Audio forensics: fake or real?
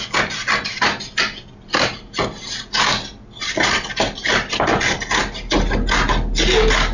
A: real